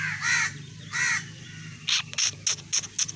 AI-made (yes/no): no